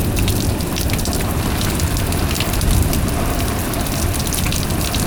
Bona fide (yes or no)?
no